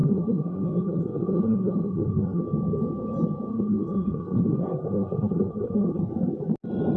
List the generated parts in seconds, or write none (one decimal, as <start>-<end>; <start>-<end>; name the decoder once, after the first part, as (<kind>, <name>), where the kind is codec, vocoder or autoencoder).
0.0-2.4 (codec, SNAC); 3.5-6.0